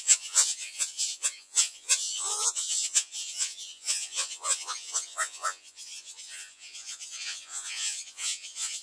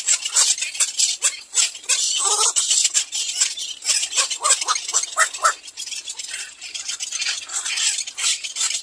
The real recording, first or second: second